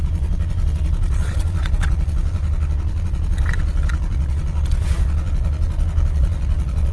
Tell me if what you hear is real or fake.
fake